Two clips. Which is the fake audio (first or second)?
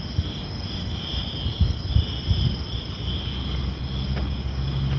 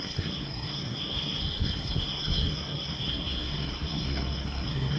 second